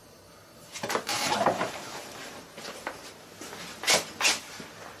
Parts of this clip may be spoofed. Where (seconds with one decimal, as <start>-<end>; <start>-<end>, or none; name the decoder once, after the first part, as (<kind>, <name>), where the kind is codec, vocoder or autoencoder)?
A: 0.0-3.0 (vocoder, BigVGAN v2)